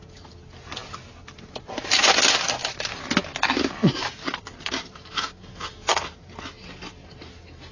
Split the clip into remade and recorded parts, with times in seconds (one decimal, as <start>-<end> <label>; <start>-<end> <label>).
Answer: 0.0-7.7 recorded